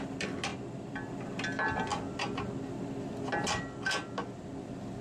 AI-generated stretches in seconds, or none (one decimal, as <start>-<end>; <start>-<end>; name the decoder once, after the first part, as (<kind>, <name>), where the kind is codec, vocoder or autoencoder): none